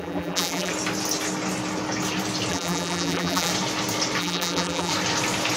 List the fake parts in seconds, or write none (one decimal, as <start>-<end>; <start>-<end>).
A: 0.0-0.7; 2.5-3.5; 4.2-4.9